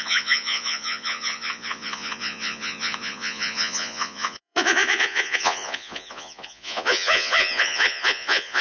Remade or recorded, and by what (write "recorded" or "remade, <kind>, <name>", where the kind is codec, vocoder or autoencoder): remade, vocoder, Vocos